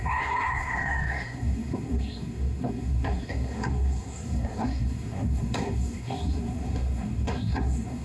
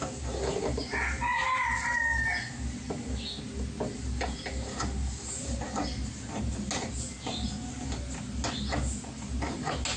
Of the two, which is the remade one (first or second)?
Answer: first